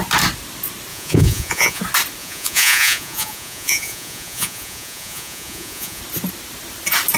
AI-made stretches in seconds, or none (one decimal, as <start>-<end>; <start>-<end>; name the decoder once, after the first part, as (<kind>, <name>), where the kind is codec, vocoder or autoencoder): 0.9-1.8 (vocoder, Vocos); 2.2-6.0